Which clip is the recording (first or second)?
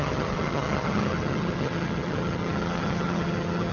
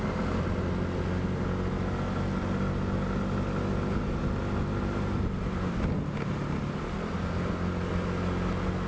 second